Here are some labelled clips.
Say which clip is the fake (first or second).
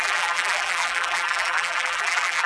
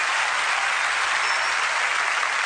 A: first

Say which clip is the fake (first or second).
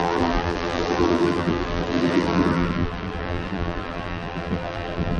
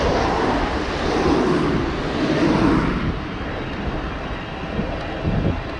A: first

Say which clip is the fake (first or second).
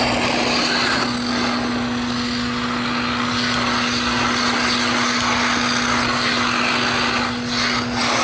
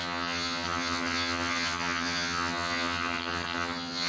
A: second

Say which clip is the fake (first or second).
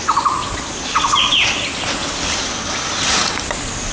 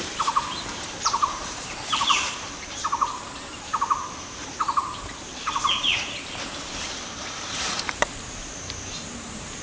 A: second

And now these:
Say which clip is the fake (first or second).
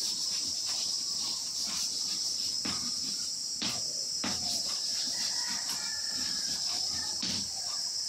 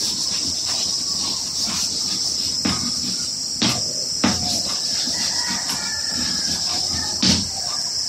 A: first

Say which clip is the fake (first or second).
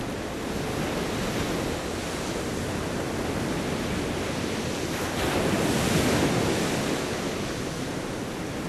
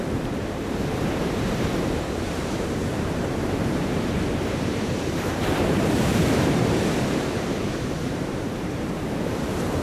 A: second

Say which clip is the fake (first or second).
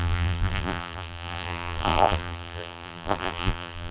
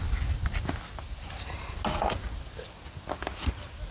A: first